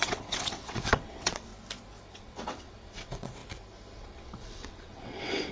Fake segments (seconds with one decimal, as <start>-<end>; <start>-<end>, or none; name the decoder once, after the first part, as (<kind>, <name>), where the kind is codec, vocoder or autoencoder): 0.0-1.5 (vocoder, WaveNeXt); 2.1-3.4; 4.0-5.5